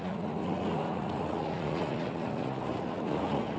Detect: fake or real fake